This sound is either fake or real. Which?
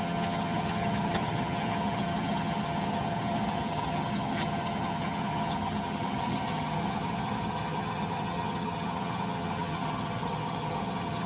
fake